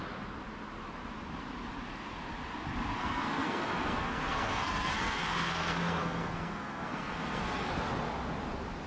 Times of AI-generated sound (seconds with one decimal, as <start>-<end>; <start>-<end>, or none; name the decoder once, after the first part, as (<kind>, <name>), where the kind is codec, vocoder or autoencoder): 3.0-7.7 (codec, SNAC)